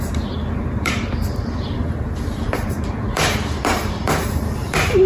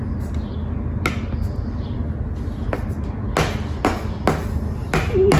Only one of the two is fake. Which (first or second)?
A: first